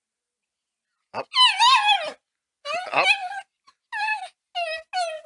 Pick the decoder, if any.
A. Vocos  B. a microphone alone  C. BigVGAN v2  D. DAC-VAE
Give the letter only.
B